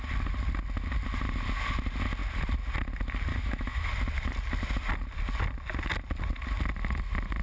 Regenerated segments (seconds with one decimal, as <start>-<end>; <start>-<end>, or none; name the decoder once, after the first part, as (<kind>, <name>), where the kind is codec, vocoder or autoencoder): 3.3-3.9 (autoencoder, DAC-VAE)